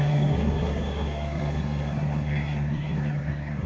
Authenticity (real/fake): fake